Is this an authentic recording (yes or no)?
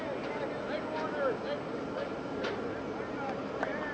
yes